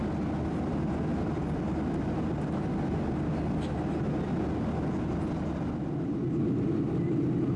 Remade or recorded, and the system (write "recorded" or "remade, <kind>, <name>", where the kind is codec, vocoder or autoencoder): recorded